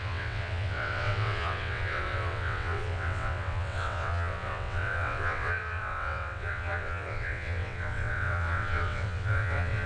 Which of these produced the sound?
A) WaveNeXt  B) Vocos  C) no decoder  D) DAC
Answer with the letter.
A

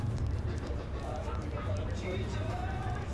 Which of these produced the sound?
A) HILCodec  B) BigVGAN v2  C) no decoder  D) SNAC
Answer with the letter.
B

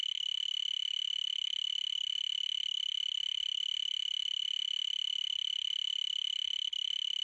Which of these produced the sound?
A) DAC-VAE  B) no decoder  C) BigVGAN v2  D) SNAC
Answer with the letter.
B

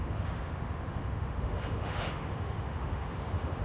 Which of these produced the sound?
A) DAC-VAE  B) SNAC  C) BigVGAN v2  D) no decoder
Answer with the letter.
A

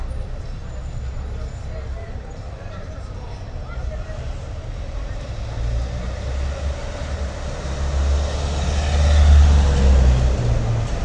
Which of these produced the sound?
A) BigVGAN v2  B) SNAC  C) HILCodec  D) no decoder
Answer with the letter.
D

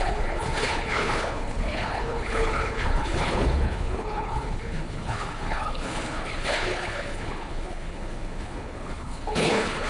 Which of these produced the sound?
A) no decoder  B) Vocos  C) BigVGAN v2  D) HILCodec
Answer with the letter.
D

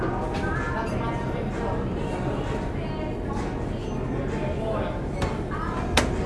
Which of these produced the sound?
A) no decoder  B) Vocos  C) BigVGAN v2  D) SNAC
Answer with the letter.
A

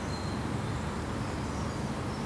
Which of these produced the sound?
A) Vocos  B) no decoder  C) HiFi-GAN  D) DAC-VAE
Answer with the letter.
B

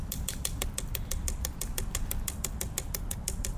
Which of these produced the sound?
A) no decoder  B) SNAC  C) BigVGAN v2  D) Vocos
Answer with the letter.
A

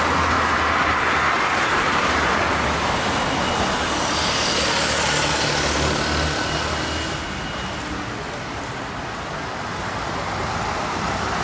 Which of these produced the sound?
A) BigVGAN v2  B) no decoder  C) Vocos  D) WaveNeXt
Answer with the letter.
B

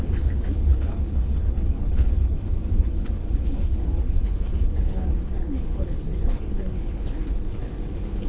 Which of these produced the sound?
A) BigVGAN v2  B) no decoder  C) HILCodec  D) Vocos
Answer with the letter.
C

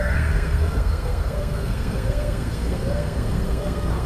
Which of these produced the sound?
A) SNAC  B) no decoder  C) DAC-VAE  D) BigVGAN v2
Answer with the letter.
A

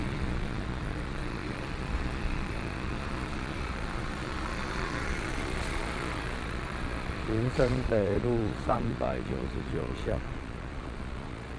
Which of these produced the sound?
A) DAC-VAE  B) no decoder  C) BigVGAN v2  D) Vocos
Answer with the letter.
D